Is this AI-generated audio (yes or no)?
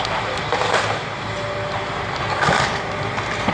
no